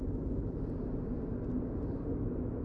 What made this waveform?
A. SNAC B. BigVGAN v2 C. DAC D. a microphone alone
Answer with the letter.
D